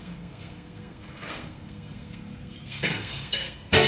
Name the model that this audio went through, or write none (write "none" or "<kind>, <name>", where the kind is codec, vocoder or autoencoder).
codec, SNAC